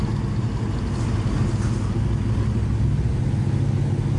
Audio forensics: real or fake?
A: real